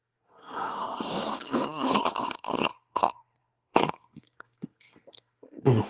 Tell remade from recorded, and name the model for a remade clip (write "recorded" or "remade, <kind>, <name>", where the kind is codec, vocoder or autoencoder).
remade, codec, SNAC